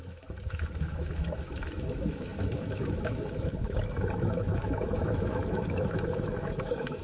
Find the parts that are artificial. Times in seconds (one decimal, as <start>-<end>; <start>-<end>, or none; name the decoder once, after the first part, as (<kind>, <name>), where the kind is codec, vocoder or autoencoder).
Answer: 0.0-7.0 (autoencoder, DAC-VAE)

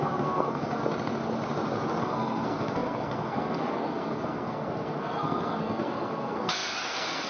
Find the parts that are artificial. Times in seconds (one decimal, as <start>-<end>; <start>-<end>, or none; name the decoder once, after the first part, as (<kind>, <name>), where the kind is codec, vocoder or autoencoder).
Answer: 0.0-0.8 (codec, SNAC); 2.0-7.3

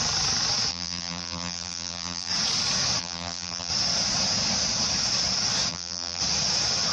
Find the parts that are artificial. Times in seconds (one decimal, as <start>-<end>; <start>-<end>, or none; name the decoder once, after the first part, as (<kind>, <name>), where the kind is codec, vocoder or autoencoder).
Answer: 0.7-2.3 (vocoder, BigVGAN v2); 3.0-3.7; 5.7-6.2

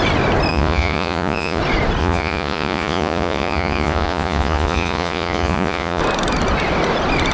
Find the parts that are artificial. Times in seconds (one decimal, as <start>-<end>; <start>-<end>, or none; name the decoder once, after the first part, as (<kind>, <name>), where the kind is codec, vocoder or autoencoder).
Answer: 0.5-1.6 (vocoder, Vocos); 2.0-6.0

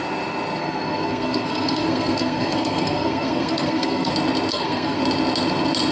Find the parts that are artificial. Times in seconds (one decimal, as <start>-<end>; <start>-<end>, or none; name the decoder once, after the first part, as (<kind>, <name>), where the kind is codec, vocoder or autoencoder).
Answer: 0.6-4.1 (codec, SNAC); 4.5-5.0

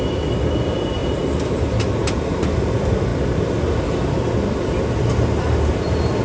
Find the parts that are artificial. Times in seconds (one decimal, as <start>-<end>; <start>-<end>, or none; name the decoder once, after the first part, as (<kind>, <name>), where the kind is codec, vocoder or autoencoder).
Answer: none

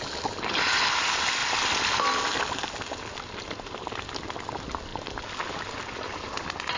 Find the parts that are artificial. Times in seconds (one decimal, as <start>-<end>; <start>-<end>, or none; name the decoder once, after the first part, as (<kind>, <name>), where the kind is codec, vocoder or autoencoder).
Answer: none

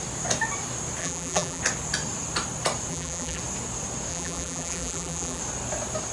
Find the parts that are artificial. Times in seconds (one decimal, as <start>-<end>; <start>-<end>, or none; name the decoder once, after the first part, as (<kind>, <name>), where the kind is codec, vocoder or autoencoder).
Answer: 1.0-1.6 (vocoder, BigVGAN v2); 2.9-3.4; 4.1-5.4